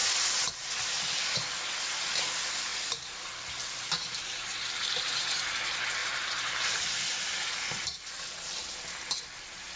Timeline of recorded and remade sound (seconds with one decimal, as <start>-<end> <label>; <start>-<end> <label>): 0.0-9.8 recorded